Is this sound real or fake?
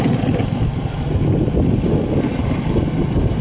real